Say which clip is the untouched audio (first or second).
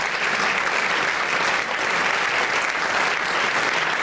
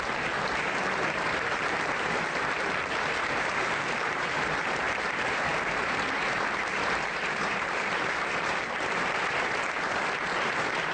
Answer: first